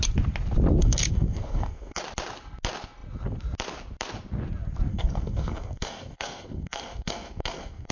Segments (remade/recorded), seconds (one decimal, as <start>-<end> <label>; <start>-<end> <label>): 0.0-0.8 recorded; 0.8-2.0 remade; 2.0-4.9 recorded; 4.9-7.9 remade